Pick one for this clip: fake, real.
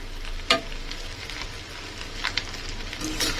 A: real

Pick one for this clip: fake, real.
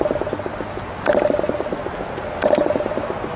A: real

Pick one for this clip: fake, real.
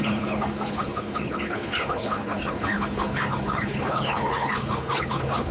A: fake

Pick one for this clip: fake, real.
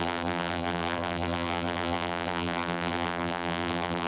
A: fake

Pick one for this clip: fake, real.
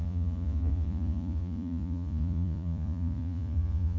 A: fake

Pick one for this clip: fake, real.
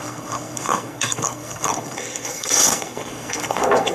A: fake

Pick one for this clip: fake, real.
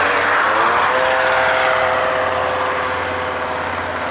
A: real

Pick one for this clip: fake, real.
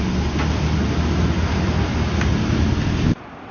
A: real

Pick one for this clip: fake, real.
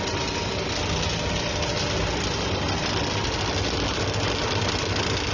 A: real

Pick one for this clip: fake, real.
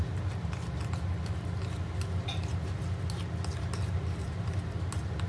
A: real